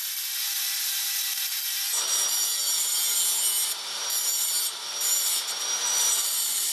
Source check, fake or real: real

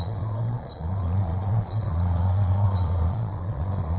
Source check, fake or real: fake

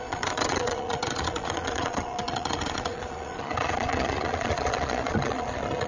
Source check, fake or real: fake